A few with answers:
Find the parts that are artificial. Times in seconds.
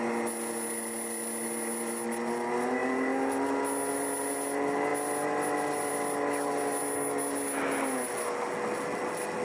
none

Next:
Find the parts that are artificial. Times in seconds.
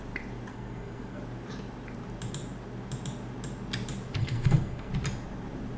0.5-1.2 (codec, SNAC); 4.2-4.9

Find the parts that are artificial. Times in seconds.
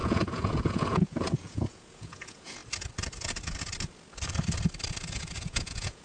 0.0-2.6 (vocoder, Vocos); 5.1-6.0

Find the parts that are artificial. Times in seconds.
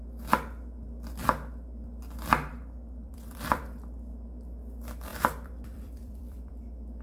2.5-3.6 (vocoder, BigVGAN v2); 5.1-6.5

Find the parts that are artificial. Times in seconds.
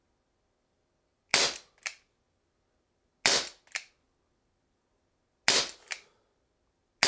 none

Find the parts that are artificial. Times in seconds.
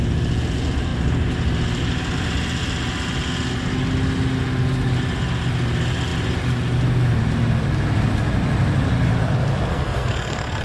9.7-10.6 (codec, SNAC)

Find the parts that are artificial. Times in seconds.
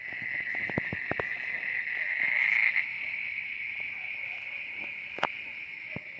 none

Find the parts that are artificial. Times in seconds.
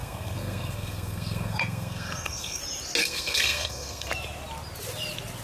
0.0-2.6 (codec, SNAC); 3.0-4.1